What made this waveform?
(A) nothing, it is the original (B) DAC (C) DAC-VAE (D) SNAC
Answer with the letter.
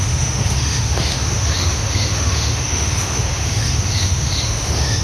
C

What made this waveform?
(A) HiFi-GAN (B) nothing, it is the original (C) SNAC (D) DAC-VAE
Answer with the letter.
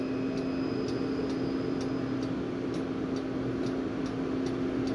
B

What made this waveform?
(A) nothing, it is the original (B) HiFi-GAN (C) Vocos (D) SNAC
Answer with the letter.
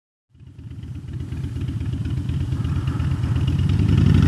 A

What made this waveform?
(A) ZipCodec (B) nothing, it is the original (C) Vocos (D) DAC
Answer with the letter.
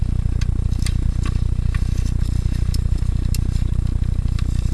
B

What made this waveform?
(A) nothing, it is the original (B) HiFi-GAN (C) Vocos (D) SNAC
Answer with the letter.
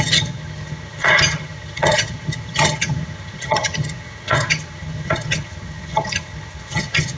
B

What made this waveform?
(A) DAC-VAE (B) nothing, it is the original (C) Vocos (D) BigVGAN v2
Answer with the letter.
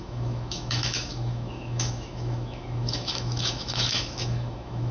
A